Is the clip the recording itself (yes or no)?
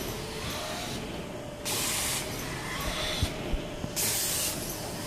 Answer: yes